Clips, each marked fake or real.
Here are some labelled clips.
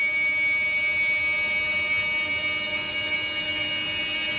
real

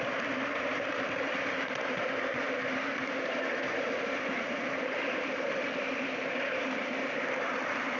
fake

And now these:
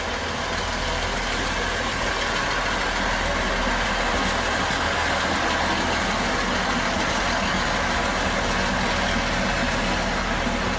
real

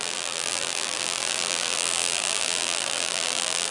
fake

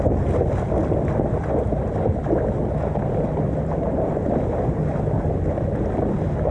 real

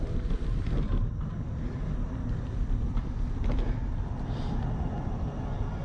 fake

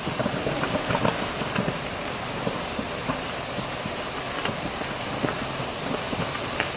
real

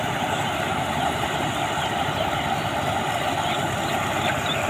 real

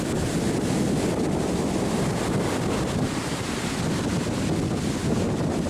real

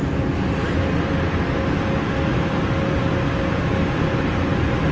real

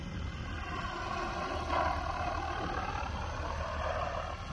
real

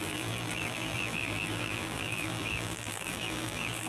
fake